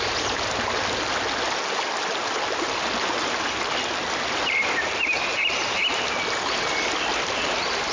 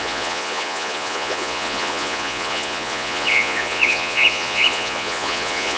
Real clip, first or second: first